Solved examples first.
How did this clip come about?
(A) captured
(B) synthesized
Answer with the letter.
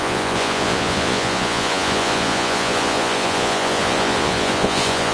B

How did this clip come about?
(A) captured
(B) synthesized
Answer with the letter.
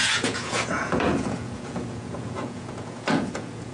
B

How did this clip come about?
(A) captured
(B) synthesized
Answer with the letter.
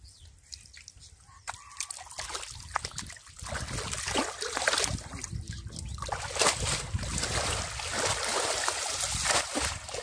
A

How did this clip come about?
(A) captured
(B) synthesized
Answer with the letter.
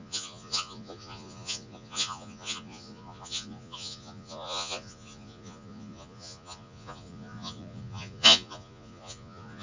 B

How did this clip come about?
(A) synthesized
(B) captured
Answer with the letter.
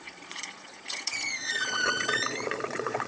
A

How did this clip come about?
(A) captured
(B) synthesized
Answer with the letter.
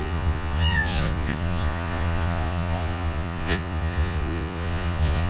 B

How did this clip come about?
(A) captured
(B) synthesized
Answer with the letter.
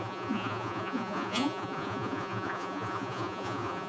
B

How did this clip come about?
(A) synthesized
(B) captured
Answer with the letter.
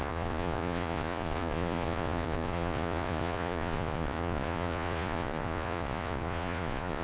A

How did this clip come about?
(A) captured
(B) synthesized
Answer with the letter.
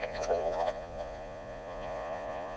B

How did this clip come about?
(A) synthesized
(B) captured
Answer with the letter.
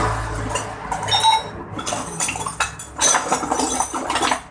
B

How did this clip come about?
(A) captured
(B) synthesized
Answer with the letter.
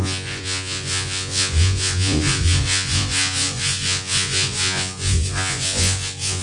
B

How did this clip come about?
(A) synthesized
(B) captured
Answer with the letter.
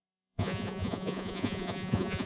A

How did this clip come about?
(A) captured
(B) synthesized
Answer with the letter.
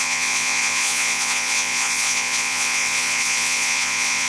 B